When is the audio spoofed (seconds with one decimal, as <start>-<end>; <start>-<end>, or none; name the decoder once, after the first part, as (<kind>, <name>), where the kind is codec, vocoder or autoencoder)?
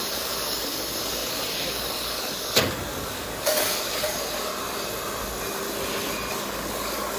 0.0-4.5 (codec, DAC); 6.3-7.2